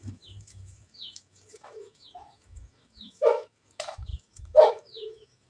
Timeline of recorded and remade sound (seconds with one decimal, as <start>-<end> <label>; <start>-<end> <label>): 0.0-5.5 remade